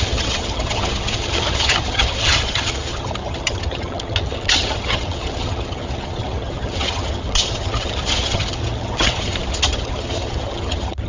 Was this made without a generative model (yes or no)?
no